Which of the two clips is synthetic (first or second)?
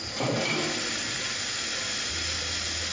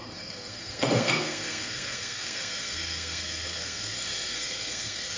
second